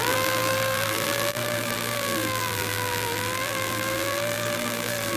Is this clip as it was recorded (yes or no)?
no